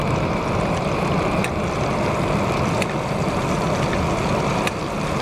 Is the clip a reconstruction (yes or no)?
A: no